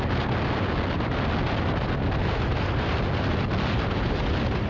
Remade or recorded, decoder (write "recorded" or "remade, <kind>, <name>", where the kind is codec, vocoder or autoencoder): recorded